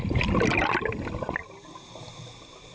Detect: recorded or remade recorded